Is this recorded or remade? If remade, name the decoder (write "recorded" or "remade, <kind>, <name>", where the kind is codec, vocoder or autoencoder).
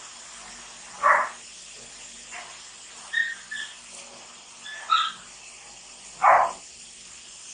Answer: recorded